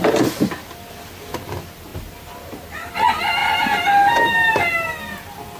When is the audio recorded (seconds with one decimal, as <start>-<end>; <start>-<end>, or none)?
0.0-1.9; 2.9-3.4; 4.3-5.6